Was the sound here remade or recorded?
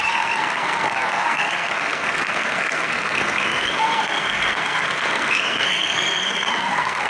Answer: remade